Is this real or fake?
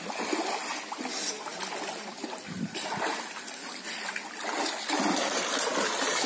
real